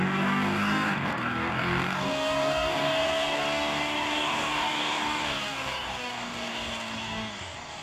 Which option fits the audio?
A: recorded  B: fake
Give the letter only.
B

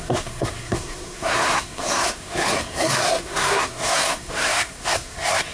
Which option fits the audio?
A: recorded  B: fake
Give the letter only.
B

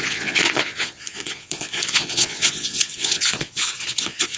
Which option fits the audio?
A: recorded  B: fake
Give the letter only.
B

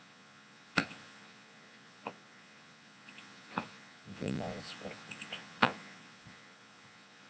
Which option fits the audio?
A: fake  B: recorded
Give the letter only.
A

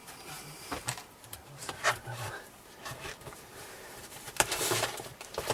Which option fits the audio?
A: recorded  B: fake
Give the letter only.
B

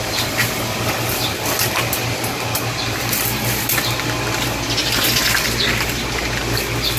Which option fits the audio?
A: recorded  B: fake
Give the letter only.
A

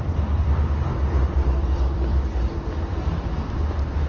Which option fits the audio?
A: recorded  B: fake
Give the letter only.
B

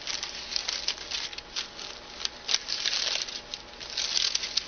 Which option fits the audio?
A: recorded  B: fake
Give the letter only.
A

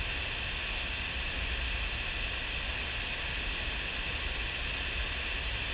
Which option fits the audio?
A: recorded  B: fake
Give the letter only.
A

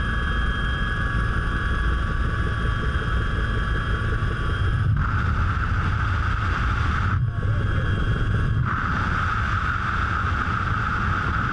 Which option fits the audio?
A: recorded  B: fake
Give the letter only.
A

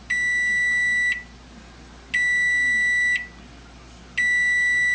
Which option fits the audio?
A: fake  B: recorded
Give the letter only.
B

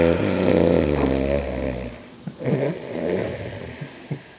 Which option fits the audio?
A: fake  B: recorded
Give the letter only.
B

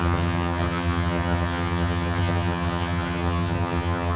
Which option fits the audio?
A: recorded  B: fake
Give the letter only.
B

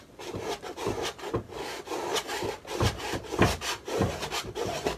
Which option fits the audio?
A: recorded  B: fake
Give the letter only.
A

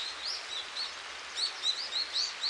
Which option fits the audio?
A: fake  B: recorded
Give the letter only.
B